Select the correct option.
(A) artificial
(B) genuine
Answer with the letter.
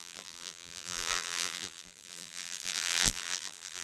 A